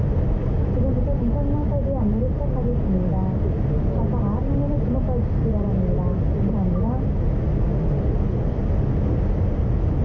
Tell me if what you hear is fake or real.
real